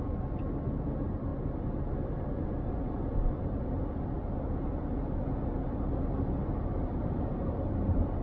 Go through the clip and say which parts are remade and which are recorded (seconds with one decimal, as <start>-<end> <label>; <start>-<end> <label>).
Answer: 0.0-1.3 remade; 1.3-1.9 recorded; 1.9-8.2 remade